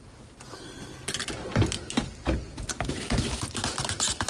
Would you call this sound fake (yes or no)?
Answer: no